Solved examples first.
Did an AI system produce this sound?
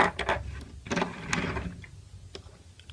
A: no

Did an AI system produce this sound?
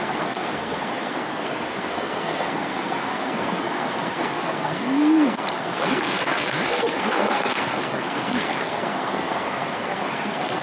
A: yes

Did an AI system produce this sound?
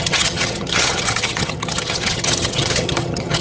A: yes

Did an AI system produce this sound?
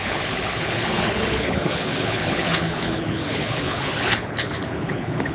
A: yes